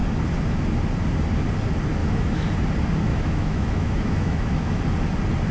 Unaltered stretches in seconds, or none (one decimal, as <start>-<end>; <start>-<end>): 0.0-2.0; 2.5-3.1; 4.8-5.5